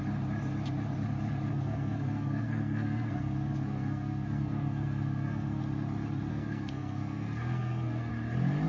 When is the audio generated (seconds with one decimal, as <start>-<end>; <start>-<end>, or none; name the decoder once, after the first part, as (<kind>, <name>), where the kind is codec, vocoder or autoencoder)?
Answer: 1.5-5.6 (codec, SNAC); 6.3-8.1